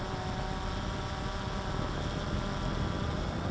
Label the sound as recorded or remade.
recorded